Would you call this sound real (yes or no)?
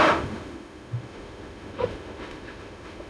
no